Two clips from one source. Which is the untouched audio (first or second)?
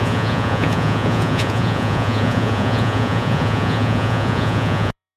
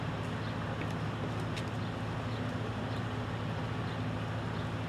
second